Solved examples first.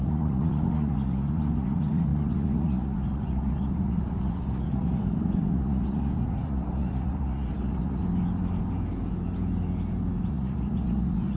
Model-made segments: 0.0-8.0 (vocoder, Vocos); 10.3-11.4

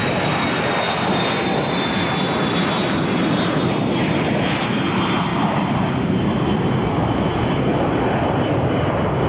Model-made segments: none